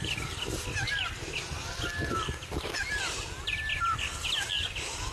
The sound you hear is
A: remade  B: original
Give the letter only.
B